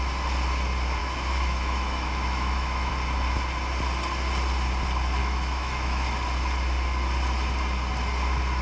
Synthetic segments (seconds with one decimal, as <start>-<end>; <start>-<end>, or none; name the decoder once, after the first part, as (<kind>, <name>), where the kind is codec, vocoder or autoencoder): 1.0-2.9 (autoencoder, DAC-VAE); 5.2-6.1